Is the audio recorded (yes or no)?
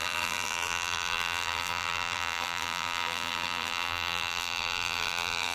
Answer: no